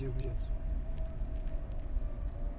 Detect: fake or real fake